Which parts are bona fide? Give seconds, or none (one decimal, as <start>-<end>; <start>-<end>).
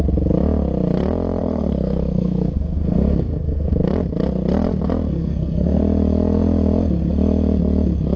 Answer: 0.0-1.4; 3.7-5.0; 5.8-8.2